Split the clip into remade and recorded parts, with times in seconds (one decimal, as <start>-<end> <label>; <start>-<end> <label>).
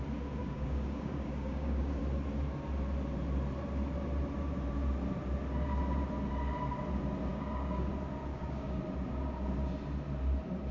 0.0-0.4 recorded; 0.4-2.0 remade; 2.0-7.3 recorded; 7.3-7.9 remade; 7.9-8.3 recorded; 8.3-8.8 remade; 8.8-10.7 recorded